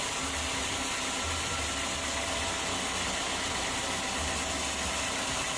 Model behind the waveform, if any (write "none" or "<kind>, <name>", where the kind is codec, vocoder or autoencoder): none